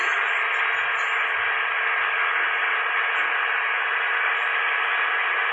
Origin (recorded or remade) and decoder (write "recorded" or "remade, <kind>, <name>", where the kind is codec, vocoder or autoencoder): recorded